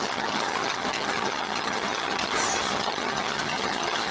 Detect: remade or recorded remade